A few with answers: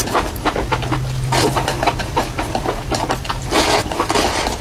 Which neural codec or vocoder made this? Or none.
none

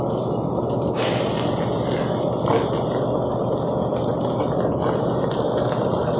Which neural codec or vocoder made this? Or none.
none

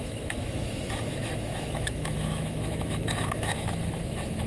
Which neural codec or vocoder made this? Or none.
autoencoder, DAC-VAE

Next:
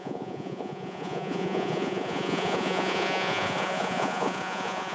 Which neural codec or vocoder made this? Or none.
vocoder, Vocos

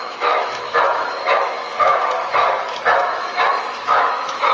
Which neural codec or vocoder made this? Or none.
autoencoder, DAC-VAE